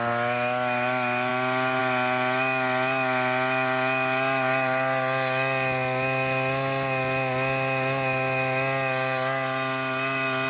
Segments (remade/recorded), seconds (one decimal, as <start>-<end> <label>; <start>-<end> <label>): 0.0-10.5 recorded